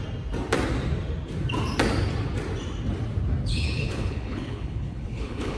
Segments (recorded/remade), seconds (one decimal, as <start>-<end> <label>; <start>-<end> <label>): 0.0-3.4 recorded; 3.4-5.6 remade